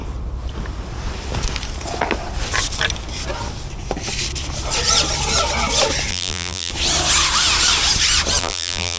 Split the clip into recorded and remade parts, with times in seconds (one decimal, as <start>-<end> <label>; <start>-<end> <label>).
0.0-6.1 recorded; 6.1-6.7 remade; 6.7-8.4 recorded; 8.4-9.0 remade